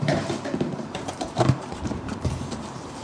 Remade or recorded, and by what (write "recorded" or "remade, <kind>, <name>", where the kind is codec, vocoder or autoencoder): remade, vocoder, BigVGAN v2